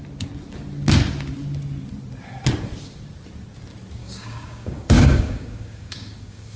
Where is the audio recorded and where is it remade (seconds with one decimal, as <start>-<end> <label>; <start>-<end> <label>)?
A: 0.0-4.0 recorded; 4.0-6.6 remade